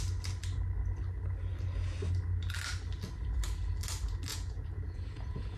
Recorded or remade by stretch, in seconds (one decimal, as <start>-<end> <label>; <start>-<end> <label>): 0.0-4.3 recorded; 4.3-5.6 remade